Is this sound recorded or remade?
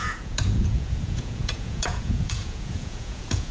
remade